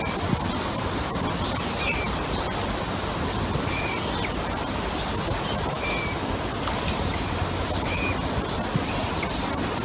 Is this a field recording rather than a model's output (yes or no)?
yes